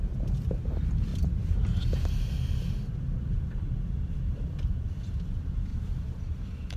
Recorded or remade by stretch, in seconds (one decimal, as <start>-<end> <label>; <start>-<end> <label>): 0.0-1.1 remade; 1.1-2.9 recorded; 2.9-6.8 remade

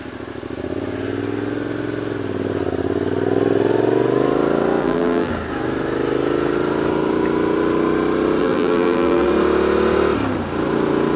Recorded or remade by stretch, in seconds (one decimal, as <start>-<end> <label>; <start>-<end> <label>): 0.0-4.8 recorded; 4.8-5.3 remade; 5.3-8.4 recorded; 8.4-9.3 remade; 9.3-11.2 recorded